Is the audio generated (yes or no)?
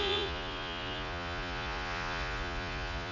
yes